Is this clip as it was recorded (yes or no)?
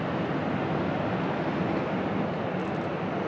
yes